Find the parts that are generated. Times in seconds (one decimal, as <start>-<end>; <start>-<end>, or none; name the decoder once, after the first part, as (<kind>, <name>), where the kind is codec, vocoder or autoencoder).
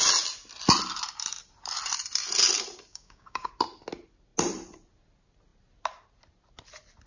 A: 2.9-3.5 (codec, DAC)